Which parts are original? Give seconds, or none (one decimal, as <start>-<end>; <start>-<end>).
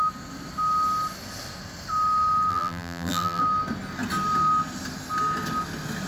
0.0-2.5; 3.4-6.1